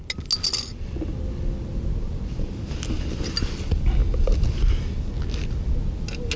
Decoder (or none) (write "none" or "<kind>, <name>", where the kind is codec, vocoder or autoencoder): none